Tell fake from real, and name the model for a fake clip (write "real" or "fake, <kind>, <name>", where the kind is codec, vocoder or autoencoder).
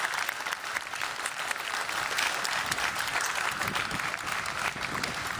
real